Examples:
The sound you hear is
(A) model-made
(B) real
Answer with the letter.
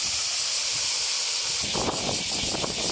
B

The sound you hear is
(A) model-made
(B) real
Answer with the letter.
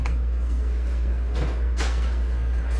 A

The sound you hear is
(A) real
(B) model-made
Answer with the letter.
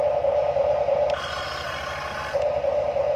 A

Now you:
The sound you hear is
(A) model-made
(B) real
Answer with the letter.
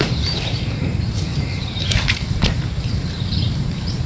A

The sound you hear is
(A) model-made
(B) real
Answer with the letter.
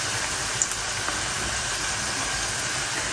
B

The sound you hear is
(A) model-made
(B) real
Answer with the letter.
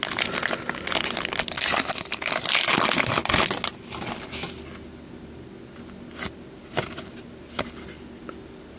B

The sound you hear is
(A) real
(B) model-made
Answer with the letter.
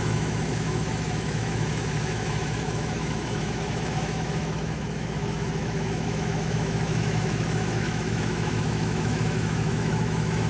B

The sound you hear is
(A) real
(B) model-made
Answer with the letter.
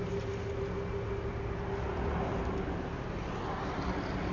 A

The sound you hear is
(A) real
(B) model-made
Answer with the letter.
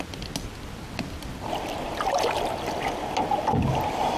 A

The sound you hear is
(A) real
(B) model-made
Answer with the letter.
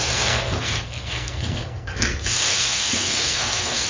B